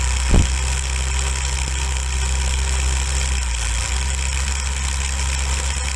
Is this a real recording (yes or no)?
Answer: yes